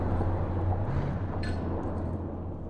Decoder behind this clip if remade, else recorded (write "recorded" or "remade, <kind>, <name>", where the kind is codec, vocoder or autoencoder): recorded